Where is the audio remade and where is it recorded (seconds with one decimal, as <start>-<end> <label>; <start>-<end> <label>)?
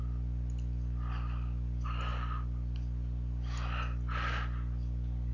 0.0-5.3 recorded